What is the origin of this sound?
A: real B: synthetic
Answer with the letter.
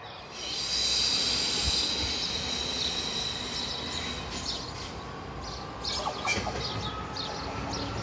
A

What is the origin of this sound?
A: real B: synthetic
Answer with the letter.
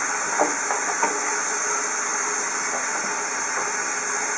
A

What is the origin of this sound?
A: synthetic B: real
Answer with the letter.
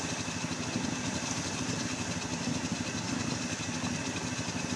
B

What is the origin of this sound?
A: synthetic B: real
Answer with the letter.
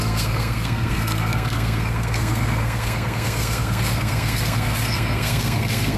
A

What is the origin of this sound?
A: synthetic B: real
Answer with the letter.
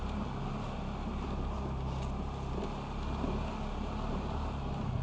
B